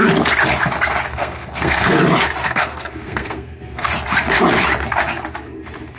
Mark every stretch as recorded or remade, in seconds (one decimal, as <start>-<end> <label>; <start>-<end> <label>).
0.0-1.1 recorded; 1.1-2.0 remade; 2.0-2.4 recorded; 2.4-3.9 remade; 3.9-6.0 recorded